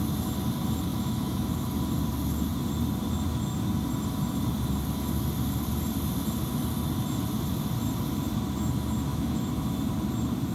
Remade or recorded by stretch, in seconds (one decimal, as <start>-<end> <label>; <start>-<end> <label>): 0.0-0.9 recorded; 0.9-1.7 remade; 1.7-9.1 recorded; 9.1-9.8 remade; 9.8-10.5 recorded